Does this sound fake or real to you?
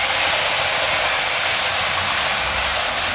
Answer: real